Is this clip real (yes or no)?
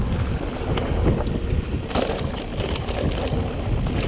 yes